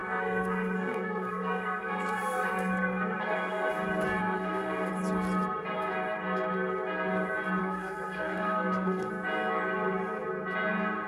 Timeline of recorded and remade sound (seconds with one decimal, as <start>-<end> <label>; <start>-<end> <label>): 0.0-3.7 remade; 3.7-4.2 recorded; 4.2-4.9 remade; 4.9-7.6 recorded; 7.6-9.1 remade; 9.1-11.1 recorded